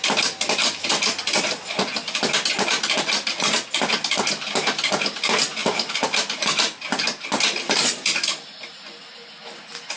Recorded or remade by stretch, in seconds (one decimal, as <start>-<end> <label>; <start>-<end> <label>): 0.0-10.0 recorded